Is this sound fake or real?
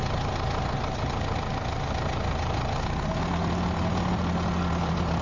real